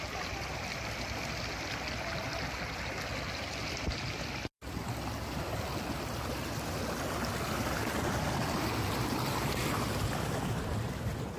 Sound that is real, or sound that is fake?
real